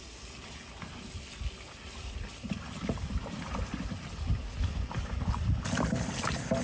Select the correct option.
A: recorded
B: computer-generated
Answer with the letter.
A